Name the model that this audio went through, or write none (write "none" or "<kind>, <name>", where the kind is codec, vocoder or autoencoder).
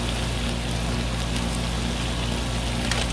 none